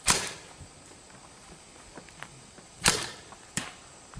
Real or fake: fake